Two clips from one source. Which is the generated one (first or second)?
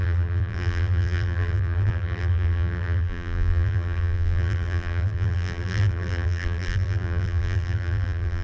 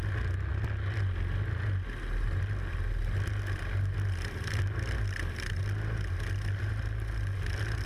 first